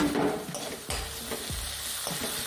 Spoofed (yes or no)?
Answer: no